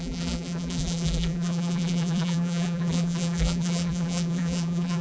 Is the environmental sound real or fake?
fake